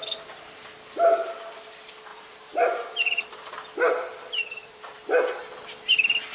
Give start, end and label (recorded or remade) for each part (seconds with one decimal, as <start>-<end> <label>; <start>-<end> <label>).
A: 0.0-2.1 recorded; 2.1-3.5 remade; 3.5-4.1 recorded; 4.1-5.4 remade; 5.4-6.3 recorded